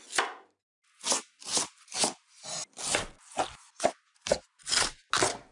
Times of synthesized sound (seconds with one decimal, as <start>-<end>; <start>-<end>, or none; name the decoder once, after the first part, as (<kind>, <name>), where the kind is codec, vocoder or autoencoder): none